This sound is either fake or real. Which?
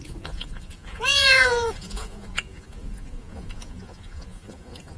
fake